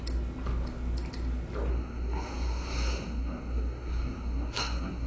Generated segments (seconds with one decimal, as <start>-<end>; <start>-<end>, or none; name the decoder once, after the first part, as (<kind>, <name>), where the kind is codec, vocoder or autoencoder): 1.7-5.1 (codec, SNAC)